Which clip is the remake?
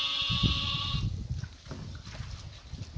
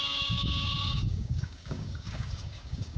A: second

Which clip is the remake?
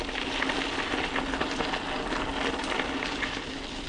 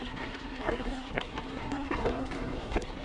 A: second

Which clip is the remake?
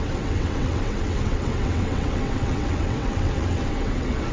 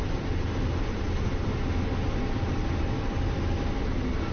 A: first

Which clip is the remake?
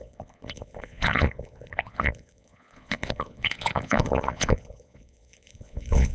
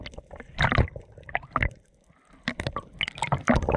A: first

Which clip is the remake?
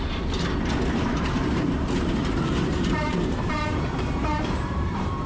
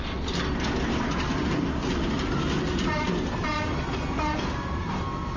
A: first